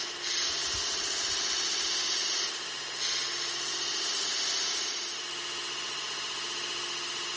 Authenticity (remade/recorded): recorded